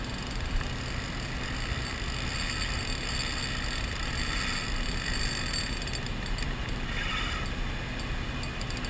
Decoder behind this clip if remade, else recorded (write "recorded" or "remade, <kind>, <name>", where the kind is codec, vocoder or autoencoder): recorded